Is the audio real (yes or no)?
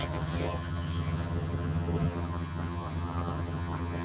no